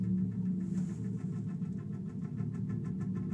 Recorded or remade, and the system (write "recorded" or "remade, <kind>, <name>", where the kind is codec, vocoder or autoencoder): recorded